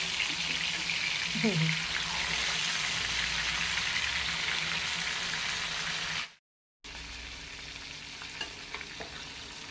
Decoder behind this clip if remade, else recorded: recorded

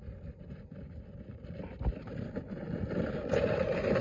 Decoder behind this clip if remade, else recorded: recorded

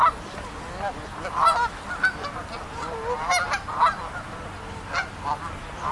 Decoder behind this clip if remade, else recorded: recorded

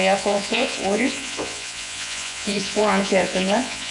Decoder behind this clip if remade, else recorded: remade, vocoder, Vocos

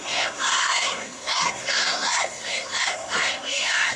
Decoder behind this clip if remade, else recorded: remade, codec, SNAC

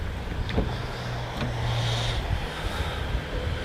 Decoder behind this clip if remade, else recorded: recorded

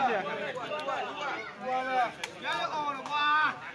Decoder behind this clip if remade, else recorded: recorded